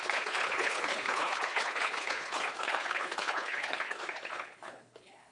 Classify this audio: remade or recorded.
remade